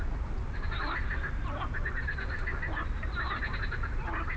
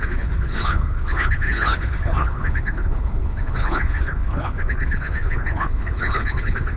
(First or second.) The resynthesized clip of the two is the second